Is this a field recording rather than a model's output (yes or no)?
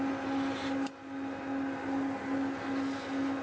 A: yes